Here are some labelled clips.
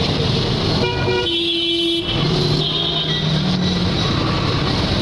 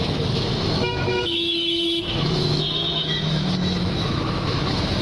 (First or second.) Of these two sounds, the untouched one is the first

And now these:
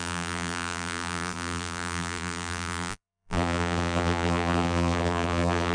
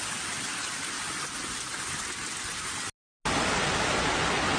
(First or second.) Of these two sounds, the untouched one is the second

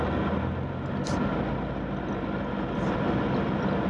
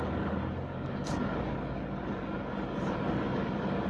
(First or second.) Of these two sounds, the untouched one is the first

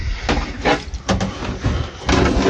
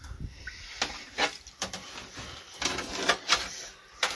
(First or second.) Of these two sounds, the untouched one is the first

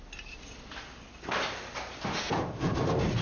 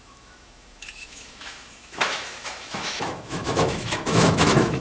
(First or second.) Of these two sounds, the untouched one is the first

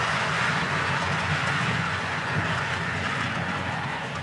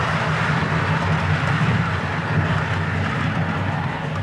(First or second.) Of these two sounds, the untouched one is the second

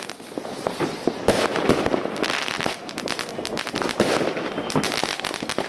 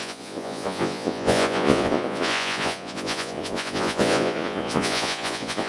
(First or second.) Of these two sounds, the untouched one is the first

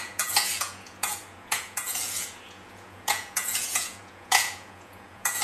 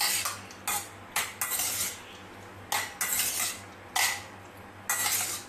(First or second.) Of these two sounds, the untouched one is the second